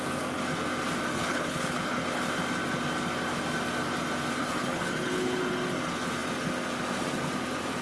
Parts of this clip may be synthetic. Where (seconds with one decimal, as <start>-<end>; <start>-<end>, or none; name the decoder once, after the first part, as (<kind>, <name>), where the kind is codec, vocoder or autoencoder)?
1.1-2.2 (codec, HILCodec); 4.4-5.4

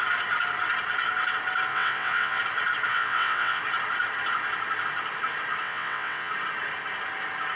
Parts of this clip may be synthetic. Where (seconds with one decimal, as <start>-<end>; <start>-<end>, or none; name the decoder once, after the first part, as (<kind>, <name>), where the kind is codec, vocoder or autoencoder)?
1.7-2.4 (vocoder, WaveNeXt); 2.9-3.6; 5.6-6.3